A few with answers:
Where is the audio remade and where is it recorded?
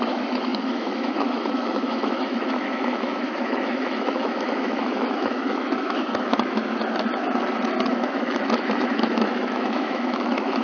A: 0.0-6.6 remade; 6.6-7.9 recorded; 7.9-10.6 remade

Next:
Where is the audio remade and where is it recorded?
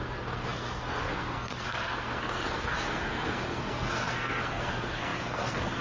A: 0.0-5.8 remade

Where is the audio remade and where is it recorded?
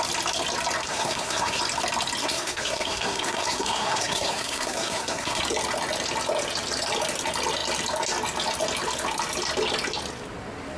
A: 0.0-0.8 recorded; 0.8-1.6 remade; 1.6-2.2 recorded; 2.2-5.4 remade; 5.4-10.8 recorded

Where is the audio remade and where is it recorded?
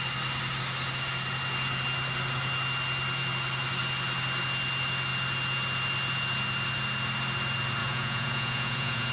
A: 0.0-7.8 recorded; 7.8-9.1 remade